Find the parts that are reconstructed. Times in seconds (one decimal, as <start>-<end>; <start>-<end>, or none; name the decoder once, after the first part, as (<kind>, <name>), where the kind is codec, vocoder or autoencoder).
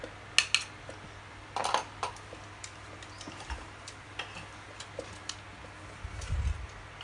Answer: none